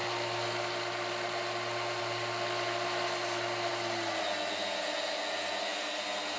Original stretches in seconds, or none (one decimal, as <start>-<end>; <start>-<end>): 0.0-6.4